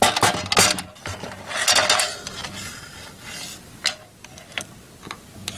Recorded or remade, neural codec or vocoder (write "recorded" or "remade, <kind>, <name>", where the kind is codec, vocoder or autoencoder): recorded